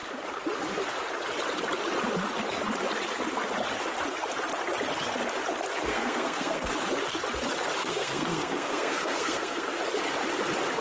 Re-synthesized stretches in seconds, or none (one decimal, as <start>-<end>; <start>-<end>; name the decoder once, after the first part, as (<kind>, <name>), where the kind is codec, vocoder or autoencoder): 5.9-6.7 (codec, SNAC); 7.8-9.8

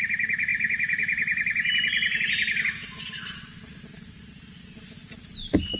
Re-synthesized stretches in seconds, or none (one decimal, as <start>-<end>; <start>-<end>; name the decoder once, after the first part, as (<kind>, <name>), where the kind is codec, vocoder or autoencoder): none